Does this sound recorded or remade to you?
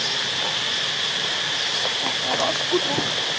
recorded